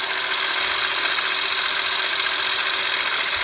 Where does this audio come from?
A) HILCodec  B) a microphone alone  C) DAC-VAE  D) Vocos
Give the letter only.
B